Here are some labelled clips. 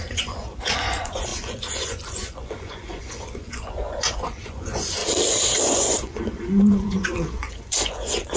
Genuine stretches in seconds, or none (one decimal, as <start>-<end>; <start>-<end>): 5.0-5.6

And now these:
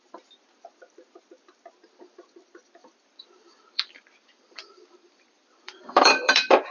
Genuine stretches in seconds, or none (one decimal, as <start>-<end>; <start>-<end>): 0.0-2.8

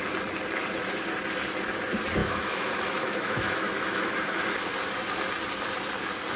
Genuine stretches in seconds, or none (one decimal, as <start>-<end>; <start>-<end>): 0.0-2.2; 4.4-6.4